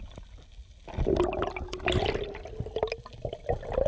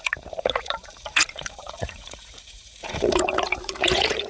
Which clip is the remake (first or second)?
second